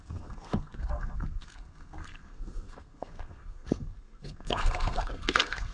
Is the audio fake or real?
fake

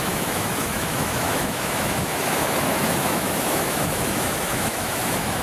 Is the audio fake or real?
fake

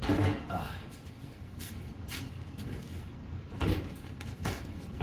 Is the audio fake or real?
fake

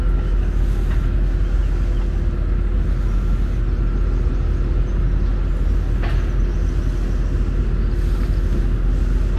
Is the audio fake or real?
real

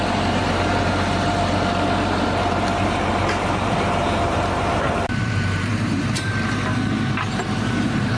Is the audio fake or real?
fake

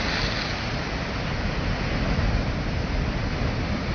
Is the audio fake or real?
real